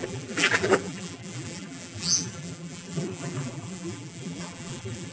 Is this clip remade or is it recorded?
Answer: remade